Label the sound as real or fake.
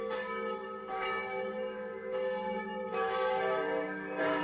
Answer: fake